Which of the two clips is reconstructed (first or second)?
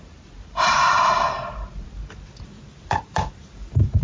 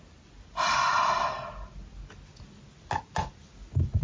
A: first